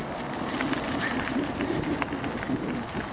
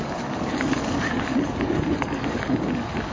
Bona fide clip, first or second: first